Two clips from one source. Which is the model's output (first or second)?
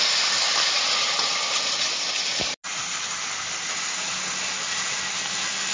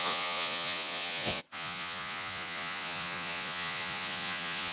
second